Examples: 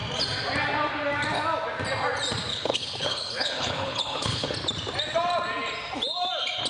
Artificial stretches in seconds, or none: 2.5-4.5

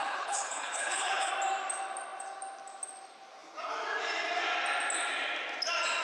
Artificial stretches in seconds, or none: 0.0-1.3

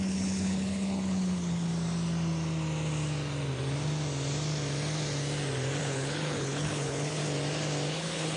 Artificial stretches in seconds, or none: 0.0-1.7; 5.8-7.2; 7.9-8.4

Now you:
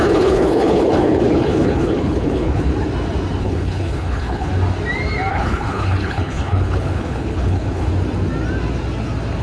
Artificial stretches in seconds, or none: 0.0-2.7; 3.4-4.5; 5.3-7.9